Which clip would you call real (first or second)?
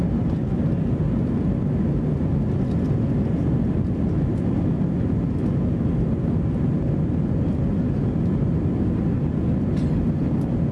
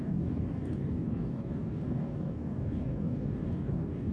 first